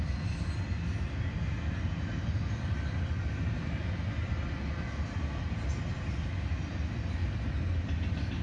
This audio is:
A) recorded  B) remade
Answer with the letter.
A